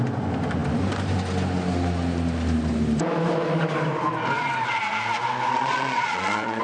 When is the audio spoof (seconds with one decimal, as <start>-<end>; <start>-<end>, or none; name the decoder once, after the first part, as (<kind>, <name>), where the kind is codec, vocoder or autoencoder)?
5.5-6.6 (vocoder, Vocos)